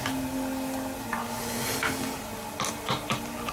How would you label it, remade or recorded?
recorded